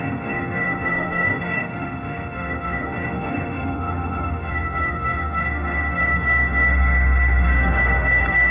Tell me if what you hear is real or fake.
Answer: fake